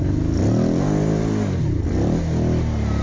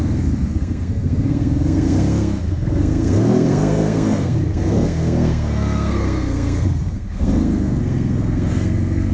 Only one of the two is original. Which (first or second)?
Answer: first